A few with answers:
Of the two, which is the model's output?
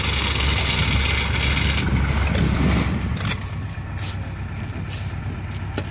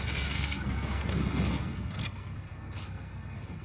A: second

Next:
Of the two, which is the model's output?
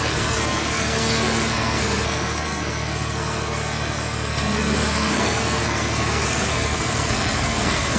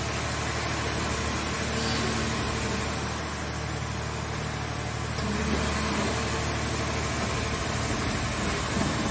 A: first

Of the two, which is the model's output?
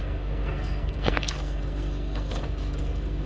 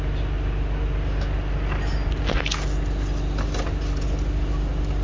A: first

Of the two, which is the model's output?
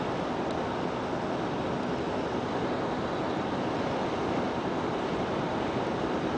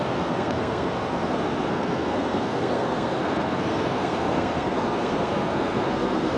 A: second